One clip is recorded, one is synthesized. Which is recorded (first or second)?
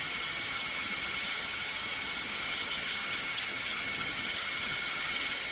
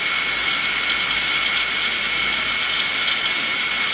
second